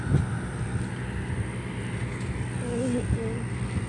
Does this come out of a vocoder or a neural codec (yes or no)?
no